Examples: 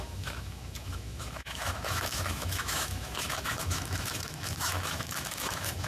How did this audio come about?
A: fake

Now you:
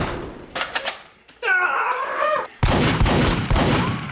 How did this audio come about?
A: fake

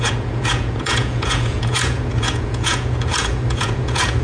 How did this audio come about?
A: fake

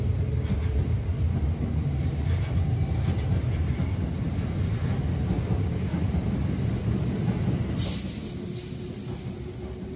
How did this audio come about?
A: real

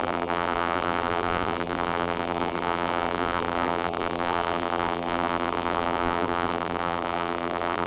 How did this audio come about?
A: fake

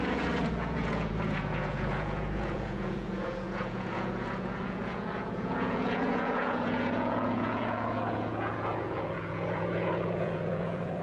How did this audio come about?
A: fake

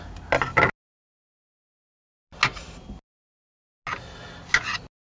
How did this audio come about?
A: real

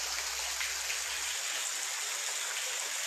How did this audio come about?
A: real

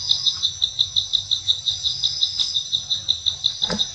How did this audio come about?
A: real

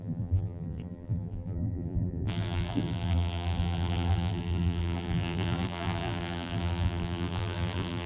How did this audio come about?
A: fake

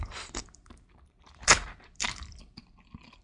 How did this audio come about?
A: fake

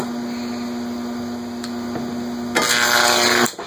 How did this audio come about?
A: real